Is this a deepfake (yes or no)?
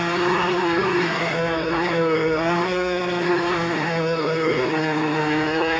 yes